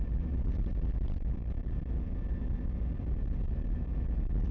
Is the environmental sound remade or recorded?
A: recorded